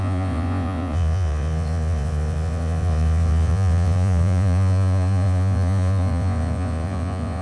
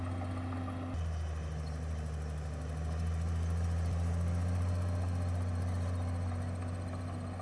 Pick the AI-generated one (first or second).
first